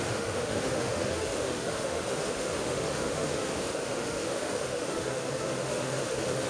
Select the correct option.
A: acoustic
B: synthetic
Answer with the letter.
B